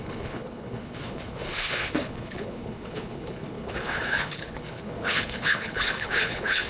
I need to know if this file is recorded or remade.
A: remade